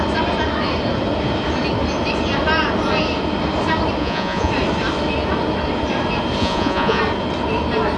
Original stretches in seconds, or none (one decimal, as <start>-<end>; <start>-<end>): 0.0-4.0; 4.5-6.4; 7.0-8.0